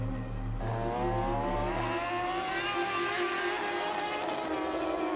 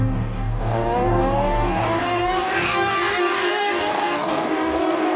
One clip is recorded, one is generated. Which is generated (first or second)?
second